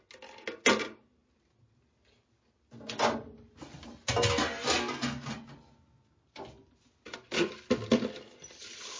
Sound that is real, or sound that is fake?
real